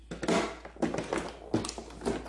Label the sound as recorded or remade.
recorded